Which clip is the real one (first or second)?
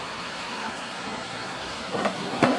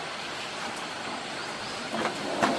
second